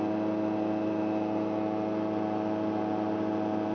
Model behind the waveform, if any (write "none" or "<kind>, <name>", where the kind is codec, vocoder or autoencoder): none